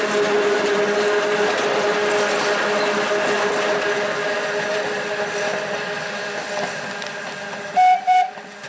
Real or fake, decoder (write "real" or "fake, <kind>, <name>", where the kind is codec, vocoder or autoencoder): real